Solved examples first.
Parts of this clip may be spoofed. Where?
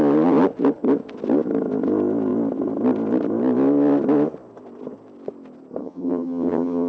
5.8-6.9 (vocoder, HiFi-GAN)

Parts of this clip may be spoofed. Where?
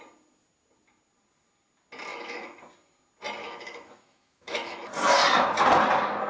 2.1-2.6 (autoencoder, DAC-VAE); 3.4-4.9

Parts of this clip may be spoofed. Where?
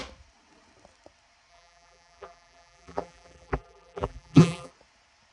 1.5-4.7 (vocoder, BigVGAN v2)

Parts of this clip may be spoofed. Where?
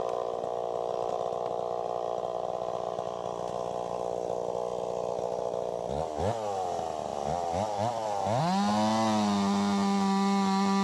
0.5-3.9 (vocoder, BigVGAN v2); 7.1-8.4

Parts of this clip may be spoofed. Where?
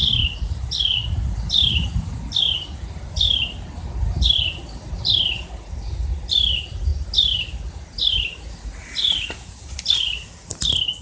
none